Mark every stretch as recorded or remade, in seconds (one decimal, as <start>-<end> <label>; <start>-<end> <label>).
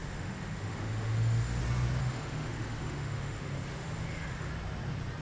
0.0-1.6 remade; 1.6-2.0 recorded; 2.0-4.5 remade; 4.5-5.2 recorded